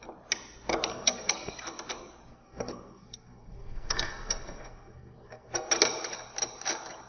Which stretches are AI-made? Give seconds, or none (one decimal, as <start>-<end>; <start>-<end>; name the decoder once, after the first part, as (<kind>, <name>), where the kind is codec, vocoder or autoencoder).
0.9-1.5 (codec, SNAC); 2.3-5.7